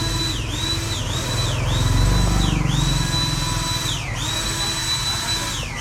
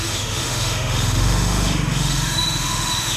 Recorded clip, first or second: first